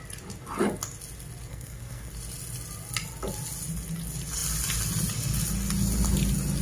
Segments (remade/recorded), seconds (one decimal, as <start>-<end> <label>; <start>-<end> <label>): 0.0-1.5 recorded; 1.5-2.1 remade; 2.1-6.6 recorded